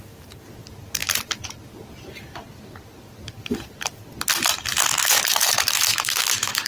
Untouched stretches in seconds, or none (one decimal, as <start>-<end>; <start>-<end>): 0.0-4.9